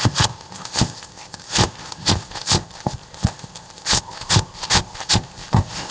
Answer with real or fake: fake